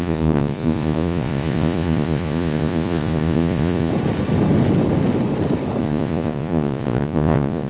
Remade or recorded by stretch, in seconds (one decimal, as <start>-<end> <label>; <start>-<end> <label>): 0.0-3.9 remade; 3.9-5.8 recorded; 5.8-7.7 remade